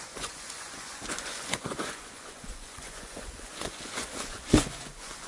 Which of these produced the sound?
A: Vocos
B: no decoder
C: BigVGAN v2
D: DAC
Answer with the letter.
A